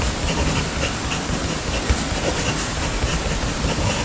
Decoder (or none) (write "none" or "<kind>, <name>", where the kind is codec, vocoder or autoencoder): none